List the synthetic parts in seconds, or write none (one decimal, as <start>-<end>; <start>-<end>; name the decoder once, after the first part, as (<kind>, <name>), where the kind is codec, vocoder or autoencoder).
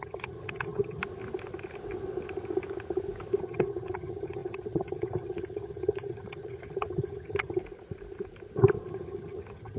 0.0-1.0 (vocoder, HiFi-GAN); 3.4-7.6; 8.9-9.8